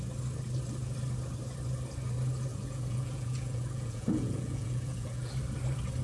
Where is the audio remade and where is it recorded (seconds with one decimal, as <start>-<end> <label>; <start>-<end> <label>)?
0.0-2.5 recorded; 2.5-5.3 remade; 5.3-6.0 recorded